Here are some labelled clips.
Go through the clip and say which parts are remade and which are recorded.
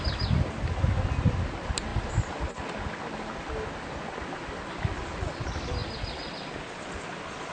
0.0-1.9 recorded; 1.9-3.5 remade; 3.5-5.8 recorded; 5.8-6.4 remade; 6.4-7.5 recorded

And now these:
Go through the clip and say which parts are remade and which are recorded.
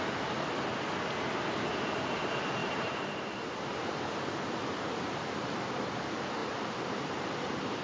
0.0-2.6 recorded; 2.6-5.1 remade; 5.1-6.4 recorded; 6.4-7.0 remade; 7.0-7.8 recorded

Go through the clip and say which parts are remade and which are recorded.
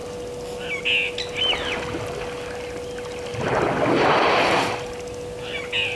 0.0-6.0 recorded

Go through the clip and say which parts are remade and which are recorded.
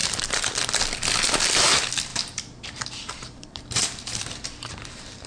0.0-0.6 remade; 0.6-2.1 recorded; 2.1-5.3 remade